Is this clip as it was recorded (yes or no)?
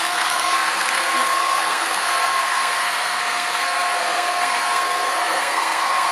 no